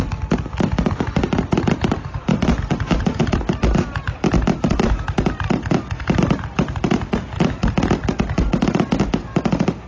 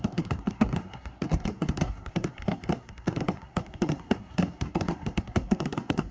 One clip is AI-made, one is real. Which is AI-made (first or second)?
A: second